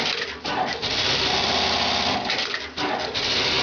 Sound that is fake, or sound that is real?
real